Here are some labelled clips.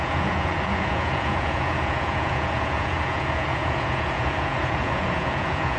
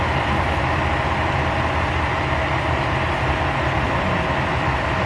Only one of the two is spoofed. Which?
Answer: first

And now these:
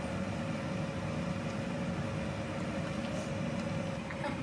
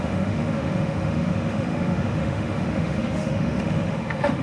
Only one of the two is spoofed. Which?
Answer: second